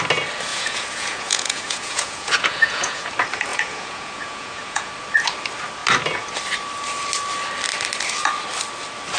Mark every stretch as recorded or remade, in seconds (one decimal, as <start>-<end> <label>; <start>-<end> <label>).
0.0-0.5 recorded; 0.5-3.1 remade; 3.1-3.5 recorded; 3.5-4.9 remade; 4.9-9.2 recorded